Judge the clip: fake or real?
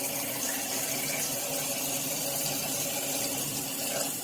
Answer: real